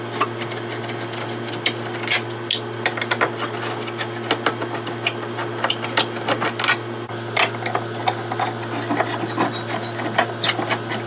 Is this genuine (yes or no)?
yes